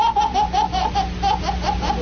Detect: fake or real real